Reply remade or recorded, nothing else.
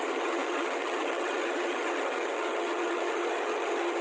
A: remade